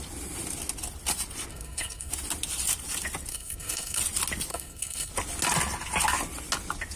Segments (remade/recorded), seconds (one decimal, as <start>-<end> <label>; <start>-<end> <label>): 0.0-1.5 recorded; 1.5-2.1 remade; 2.1-3.3 recorded; 3.3-4.0 remade; 4.0-4.5 recorded; 4.5-5.1 remade; 5.1-7.0 recorded